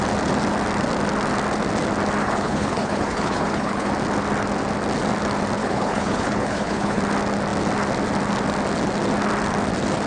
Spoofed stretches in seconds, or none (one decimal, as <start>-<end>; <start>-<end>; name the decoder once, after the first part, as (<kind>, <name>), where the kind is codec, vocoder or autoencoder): 2.2-3.9 (codec, HILCodec); 5.6-7.0